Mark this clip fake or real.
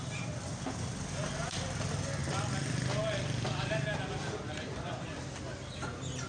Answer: real